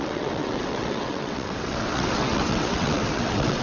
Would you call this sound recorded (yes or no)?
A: no